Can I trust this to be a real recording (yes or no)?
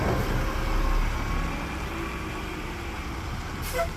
yes